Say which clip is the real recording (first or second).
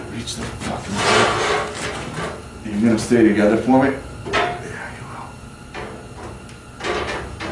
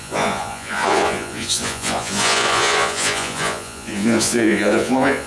first